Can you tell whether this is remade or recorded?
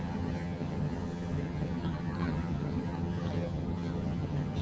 remade